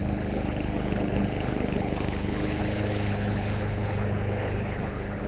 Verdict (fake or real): fake